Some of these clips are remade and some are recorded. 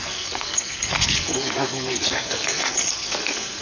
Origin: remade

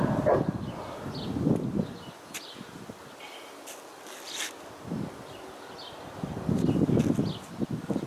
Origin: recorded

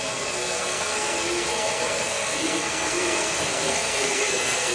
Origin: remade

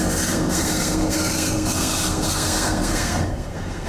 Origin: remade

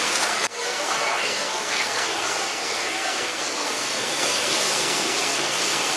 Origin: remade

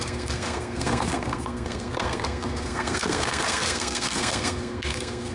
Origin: remade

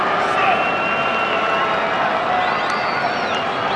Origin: recorded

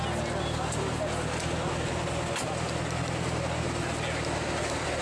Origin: recorded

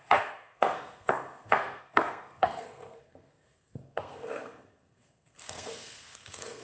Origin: remade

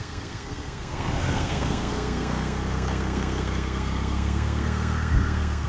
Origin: remade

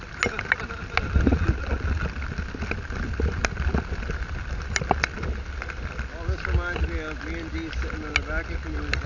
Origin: recorded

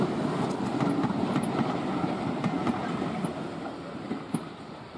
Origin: recorded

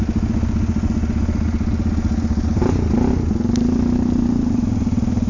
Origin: recorded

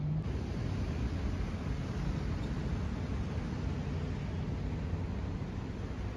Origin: recorded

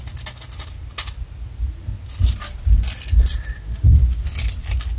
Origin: recorded